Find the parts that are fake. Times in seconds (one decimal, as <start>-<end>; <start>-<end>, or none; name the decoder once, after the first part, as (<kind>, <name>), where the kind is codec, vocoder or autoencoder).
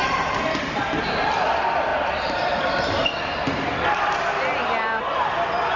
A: none